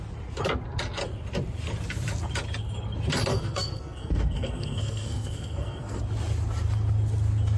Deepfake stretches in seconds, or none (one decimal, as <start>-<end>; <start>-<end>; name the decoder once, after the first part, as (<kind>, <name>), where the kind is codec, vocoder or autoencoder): 3.3-6.0 (codec, SNAC)